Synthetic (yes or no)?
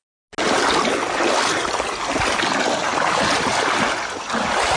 no